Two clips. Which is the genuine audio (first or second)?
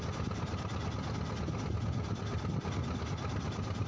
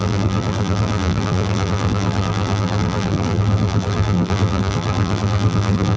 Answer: first